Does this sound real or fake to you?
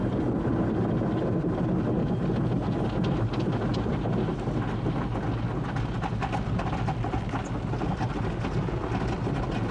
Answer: real